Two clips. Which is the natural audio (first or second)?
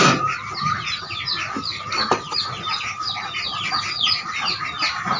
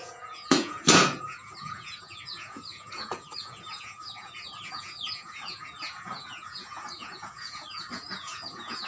first